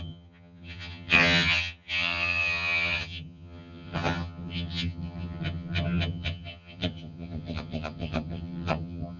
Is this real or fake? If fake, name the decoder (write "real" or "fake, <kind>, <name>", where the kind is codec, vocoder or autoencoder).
fake, vocoder, HiFi-GAN